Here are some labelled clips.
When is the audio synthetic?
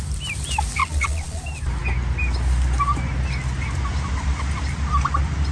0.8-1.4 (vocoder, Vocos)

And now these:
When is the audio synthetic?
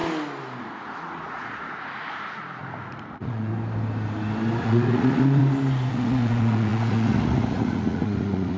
0.6-3.5 (vocoder, Vocos); 4.6-5.4; 5.9-8.6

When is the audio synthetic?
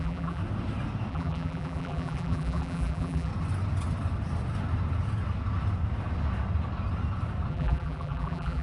0.0-0.4 (vocoder, BigVGAN v2); 1.1-3.3; 7.5-8.6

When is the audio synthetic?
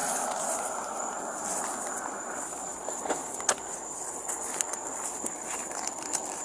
none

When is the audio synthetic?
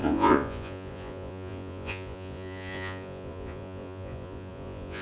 0.0-5.0 (vocoder, Vocos)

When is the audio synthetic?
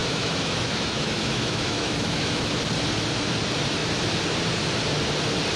0.0-2.5 (autoencoder, DAC-VAE)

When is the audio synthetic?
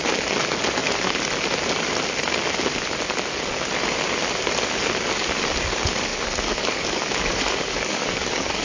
6.1-8.6 (codec, DAC)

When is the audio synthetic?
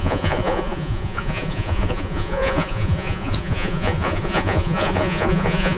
0.0-5.8 (vocoder, Vocos)